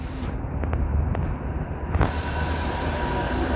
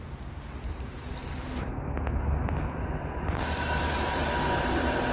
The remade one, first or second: first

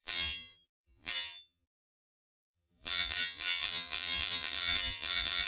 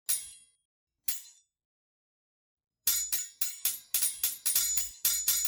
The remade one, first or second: first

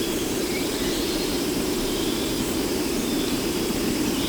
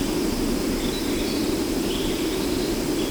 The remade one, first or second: first